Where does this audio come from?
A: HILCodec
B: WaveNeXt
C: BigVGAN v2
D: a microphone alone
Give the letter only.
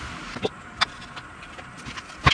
D